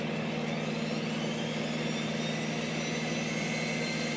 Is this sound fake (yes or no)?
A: no